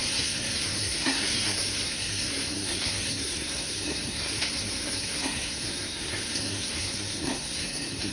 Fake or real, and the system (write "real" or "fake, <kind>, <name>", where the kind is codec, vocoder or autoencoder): fake, codec, SNAC